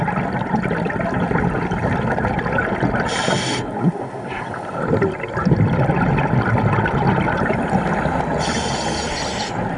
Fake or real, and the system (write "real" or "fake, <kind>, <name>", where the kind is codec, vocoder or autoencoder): real